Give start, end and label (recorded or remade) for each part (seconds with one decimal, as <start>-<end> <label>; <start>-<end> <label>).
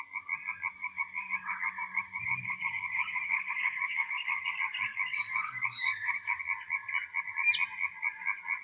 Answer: 0.0-0.7 recorded; 0.7-4.4 remade; 4.4-4.9 recorded; 4.9-6.4 remade; 6.4-8.6 recorded